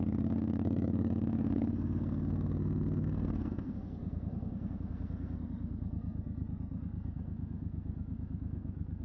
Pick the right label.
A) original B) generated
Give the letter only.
B